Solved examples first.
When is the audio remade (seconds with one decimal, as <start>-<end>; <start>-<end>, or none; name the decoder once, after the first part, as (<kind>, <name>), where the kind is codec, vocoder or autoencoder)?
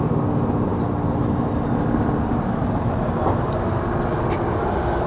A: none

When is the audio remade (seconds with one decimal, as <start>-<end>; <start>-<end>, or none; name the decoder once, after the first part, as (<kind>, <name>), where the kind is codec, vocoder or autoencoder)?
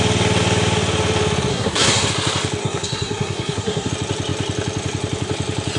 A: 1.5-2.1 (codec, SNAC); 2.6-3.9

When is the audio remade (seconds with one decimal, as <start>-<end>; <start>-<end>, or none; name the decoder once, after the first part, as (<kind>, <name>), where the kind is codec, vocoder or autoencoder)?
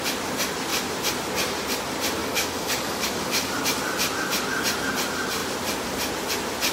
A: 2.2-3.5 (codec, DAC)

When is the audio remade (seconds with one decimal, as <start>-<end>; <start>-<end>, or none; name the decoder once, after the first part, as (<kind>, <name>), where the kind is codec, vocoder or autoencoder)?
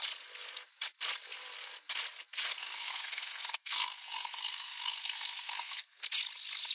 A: 2.6-6.0 (codec, SNAC)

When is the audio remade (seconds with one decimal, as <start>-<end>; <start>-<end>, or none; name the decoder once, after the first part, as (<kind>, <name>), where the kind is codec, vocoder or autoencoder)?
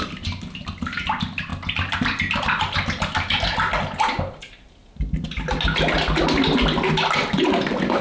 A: none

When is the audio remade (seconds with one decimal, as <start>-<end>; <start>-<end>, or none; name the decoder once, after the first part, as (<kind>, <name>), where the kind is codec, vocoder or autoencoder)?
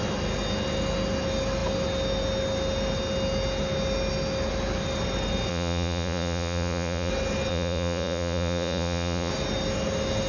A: 5.5-7.1 (vocoder, Vocos); 7.5-9.3